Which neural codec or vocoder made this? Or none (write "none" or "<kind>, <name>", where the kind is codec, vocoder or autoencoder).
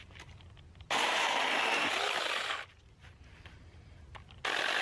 none